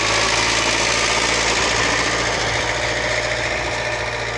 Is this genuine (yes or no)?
yes